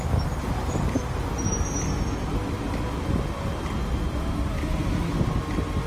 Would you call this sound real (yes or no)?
yes